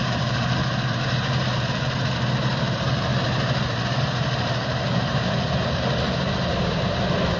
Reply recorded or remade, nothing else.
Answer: remade